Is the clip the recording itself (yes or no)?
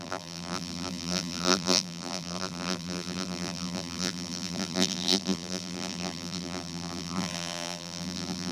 no